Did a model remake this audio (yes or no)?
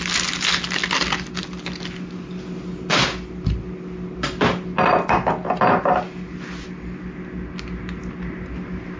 no